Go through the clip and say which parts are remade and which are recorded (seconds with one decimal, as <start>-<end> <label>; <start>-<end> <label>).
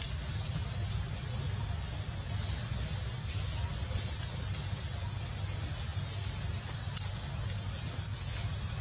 0.0-8.8 recorded